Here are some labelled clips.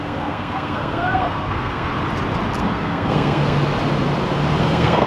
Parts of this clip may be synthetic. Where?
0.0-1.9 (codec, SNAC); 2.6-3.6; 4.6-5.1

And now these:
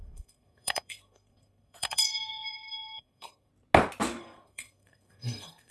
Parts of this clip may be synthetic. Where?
0.0-3.5 (codec, SNAC); 4.2-5.7

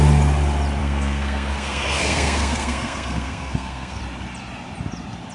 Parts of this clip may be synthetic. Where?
0.8-4.0 (codec, SNAC)

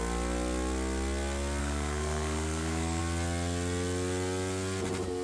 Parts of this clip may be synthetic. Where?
1.6-3.0 (codec, SNAC)